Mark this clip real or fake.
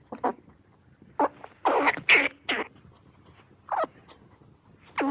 real